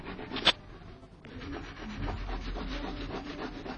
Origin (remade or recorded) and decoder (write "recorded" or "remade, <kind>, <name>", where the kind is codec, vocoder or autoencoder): recorded